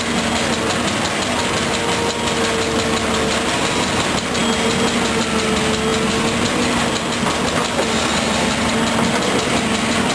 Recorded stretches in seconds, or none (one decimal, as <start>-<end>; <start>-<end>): 0.0-10.1